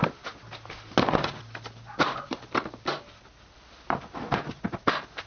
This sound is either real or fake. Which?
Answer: real